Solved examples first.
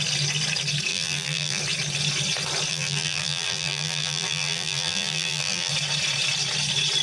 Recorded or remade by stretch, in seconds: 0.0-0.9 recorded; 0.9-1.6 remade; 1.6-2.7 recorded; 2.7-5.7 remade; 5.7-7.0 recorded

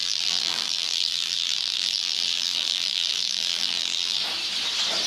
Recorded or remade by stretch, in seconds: 0.0-4.2 remade; 4.2-5.1 recorded

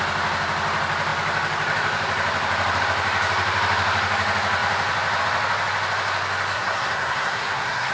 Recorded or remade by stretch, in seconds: 0.0-6.5 recorded; 6.5-7.9 remade

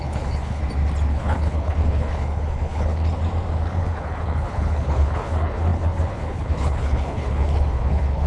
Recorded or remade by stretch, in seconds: 0.0-0.6 remade; 0.6-1.1 recorded; 1.1-3.2 remade; 3.2-3.8 recorded; 3.8-8.3 remade

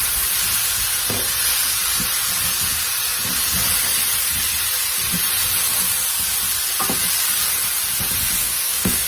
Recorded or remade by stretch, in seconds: 0.0-8.4 recorded; 8.4-9.1 remade

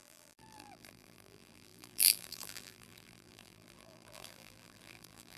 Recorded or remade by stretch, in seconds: 0.0-5.4 remade

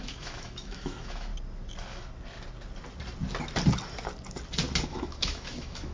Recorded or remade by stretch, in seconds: 0.0-1.3 remade; 1.3-4.8 recorded; 4.8-5.9 remade

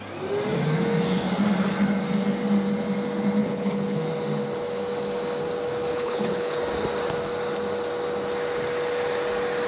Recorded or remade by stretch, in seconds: 0.0-3.4 recorded; 3.4-4.0 remade; 4.0-5.9 recorded; 5.9-6.6 remade; 6.6-9.7 recorded